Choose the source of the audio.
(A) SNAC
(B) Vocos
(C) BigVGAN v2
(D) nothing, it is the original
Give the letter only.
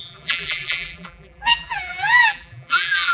C